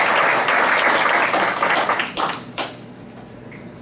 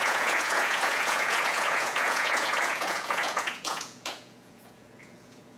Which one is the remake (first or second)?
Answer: second